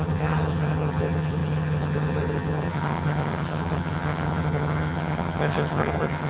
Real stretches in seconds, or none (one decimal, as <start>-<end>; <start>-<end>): none